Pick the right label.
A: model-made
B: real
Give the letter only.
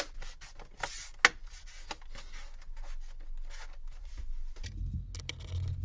B